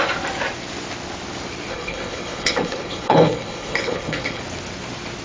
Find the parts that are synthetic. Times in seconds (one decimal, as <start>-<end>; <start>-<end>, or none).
1.7-4.4